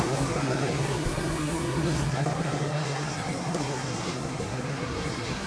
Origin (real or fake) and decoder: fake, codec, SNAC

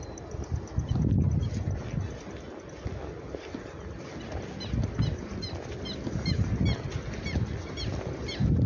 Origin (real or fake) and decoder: real